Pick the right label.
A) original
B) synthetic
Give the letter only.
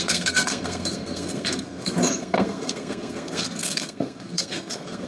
B